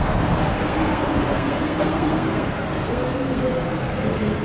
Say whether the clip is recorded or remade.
remade